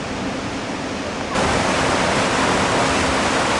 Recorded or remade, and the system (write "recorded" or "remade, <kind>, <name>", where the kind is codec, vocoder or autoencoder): recorded